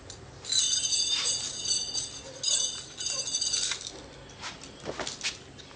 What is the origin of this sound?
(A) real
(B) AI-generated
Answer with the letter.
A